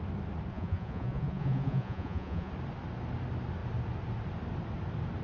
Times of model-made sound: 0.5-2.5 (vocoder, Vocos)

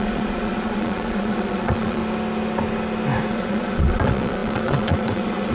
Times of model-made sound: 0.0-2.0 (vocoder, Vocos); 3.3-5.5

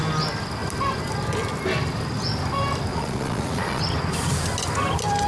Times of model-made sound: 2.9-3.8 (vocoder, Vocos)